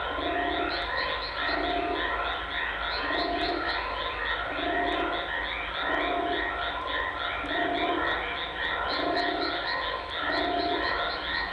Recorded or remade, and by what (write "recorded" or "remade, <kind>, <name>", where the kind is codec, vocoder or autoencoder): recorded